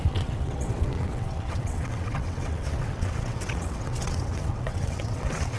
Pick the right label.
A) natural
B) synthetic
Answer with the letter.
B